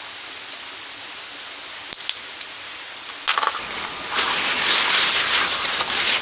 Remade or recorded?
recorded